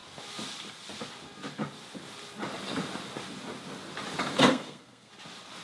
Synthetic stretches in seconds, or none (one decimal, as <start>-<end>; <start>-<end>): 4.5-5.1

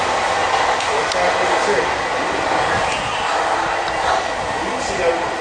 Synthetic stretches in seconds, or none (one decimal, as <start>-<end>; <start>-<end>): none

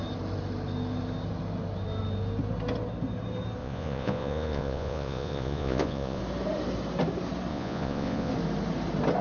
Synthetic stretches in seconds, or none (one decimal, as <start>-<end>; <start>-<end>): 3.6-6.2; 7.5-8.3

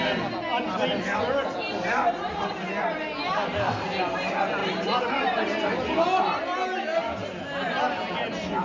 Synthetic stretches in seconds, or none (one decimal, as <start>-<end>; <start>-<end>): 4.6-5.1; 6.9-7.8

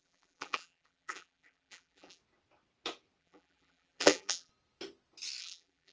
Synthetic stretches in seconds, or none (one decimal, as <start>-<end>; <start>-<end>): 0.0-2.2; 3.2-4.5; 5.4-5.9

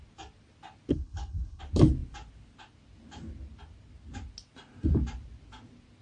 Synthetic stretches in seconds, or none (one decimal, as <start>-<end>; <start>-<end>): 0.9-1.6